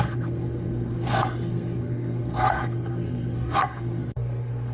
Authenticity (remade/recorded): remade